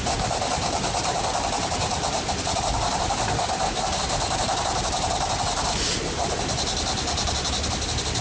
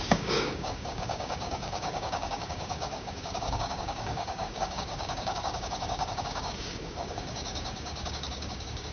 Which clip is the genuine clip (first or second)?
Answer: first